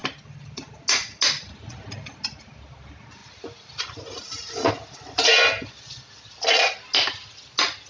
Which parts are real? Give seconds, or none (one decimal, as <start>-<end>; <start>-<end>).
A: 0.0-7.9